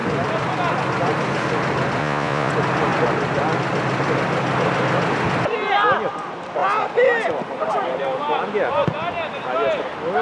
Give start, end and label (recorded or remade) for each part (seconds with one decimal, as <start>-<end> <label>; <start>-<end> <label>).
0.0-2.0 recorded; 2.0-2.5 remade; 2.5-10.2 recorded